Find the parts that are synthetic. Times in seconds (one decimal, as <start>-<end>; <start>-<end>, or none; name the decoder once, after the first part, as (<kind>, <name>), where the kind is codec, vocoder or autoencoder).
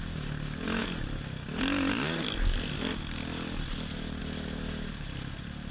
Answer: none